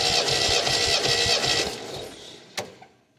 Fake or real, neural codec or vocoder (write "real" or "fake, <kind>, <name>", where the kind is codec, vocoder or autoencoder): real